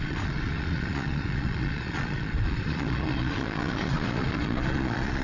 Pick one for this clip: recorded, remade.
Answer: remade